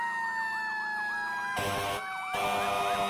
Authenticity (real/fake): real